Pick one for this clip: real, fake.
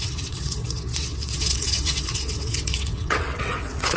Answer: fake